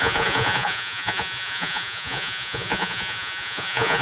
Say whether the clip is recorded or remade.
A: remade